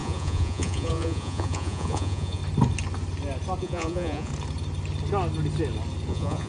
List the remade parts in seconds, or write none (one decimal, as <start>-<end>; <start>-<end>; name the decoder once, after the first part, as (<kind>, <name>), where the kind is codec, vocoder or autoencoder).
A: 0.0-2.4 (vocoder, Vocos); 3.6-4.3; 6.1-6.5

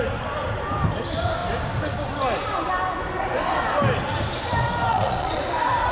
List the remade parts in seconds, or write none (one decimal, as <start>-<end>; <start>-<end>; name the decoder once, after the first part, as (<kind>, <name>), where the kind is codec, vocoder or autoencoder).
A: 4.9-5.4 (vocoder, Vocos)

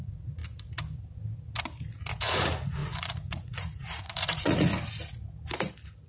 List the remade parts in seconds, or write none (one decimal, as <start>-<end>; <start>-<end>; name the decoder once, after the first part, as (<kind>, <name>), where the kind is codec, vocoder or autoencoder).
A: 0.0-0.4 (vocoder, Vocos); 2.2-4.7